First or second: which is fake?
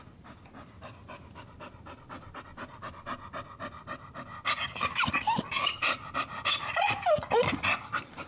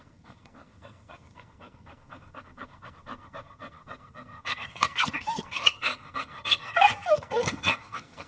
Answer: second